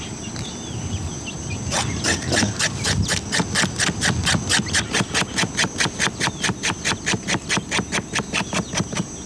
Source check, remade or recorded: recorded